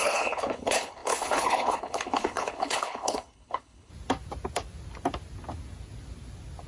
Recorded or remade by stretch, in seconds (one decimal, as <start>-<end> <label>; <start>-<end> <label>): 0.0-3.9 remade; 3.9-6.7 recorded